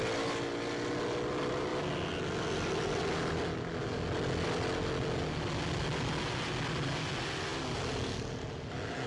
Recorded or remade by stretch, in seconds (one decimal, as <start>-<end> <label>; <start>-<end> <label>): 0.0-9.1 recorded